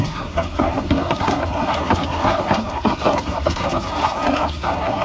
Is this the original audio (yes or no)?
no